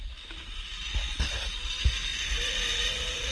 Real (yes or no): yes